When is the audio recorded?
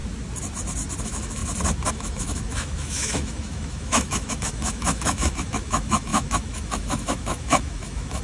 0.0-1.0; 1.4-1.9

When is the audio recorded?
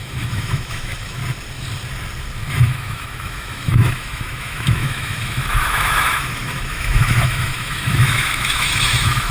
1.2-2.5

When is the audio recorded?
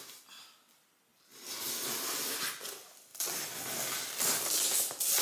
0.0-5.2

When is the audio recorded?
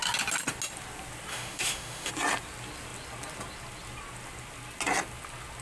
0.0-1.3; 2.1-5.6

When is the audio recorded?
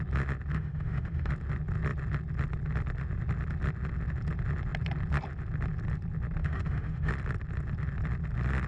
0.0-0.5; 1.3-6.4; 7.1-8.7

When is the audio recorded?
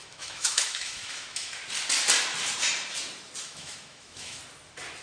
1.6-3.4; 4.4-5.0